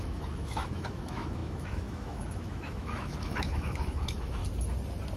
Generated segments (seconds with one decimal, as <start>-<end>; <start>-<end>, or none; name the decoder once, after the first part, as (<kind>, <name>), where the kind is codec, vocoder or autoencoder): 0.0-4.4 (autoencoder, DAC-VAE)